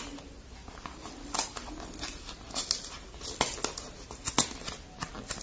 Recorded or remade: recorded